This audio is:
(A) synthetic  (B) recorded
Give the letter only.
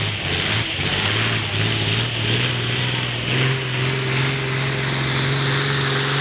B